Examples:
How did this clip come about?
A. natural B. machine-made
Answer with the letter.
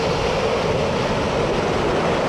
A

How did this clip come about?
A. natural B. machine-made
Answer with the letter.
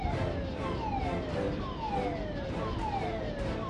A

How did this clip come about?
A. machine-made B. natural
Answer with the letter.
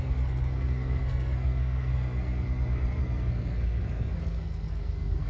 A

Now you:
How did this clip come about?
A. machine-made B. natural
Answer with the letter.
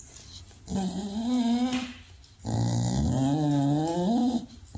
B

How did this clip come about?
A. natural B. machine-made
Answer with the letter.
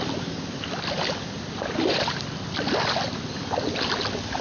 A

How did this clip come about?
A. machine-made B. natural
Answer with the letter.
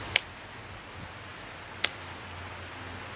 B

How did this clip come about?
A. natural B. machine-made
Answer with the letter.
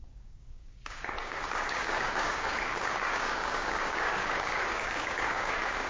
B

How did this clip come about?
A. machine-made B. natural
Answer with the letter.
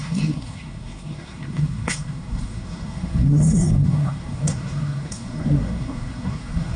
A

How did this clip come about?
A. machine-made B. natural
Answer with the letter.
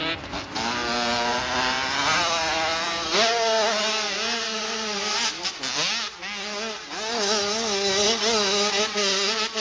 B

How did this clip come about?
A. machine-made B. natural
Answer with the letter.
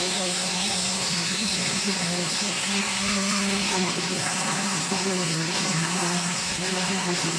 A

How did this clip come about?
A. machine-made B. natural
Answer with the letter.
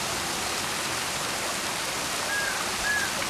B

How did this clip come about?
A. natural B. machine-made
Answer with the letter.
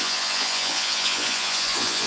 B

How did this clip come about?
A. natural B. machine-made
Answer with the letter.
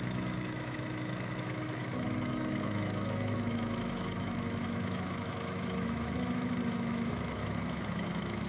B